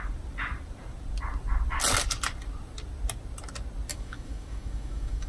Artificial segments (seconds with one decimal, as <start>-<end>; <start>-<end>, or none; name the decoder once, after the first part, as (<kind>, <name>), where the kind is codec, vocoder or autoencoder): 3.9-5.3 (autoencoder, DAC-VAE)